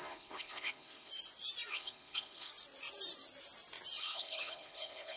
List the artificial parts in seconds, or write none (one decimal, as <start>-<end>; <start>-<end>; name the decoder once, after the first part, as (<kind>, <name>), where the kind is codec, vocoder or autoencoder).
0.0-1.1 (codec, HILCodec); 1.7-2.5; 4.0-5.2